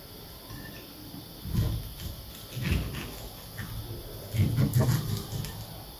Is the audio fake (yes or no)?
no